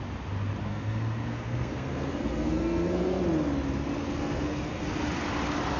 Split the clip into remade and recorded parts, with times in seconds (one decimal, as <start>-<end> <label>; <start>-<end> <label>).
0.0-0.7 recorded; 0.7-3.2 remade; 3.2-4.2 recorded; 4.2-4.9 remade; 4.9-5.8 recorded